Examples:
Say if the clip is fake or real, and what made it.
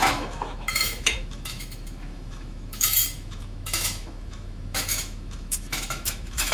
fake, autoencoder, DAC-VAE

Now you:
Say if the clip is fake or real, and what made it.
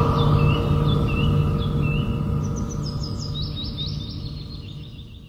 real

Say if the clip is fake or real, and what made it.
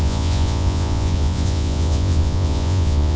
fake, vocoder, Vocos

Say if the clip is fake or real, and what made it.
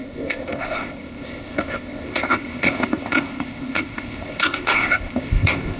fake, codec, ZipCodec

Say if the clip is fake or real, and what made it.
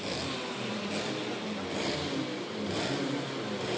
real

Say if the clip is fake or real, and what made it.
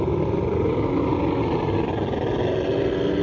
real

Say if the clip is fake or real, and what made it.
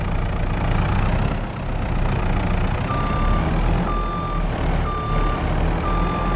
real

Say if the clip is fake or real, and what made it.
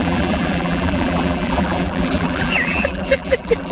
fake, vocoder, BigVGAN v2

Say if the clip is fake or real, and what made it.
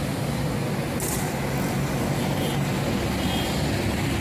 real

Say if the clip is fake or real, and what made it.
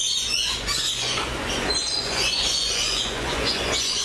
fake, vocoder, Vocos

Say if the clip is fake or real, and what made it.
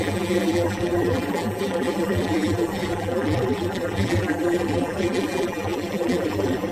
fake, vocoder, BigVGAN v2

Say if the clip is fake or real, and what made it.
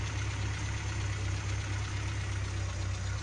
real